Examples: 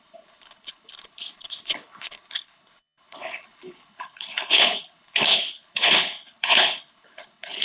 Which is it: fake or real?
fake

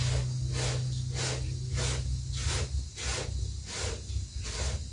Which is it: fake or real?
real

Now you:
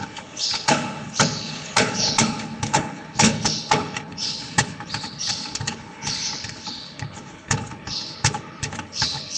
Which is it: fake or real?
fake